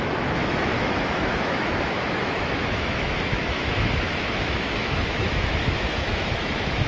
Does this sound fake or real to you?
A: fake